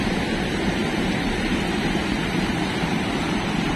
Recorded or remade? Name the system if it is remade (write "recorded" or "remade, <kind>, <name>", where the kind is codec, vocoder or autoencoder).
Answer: remade, vocoder, BigVGAN v2